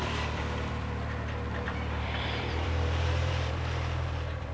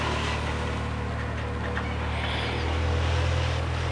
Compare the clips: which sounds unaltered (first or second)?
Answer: second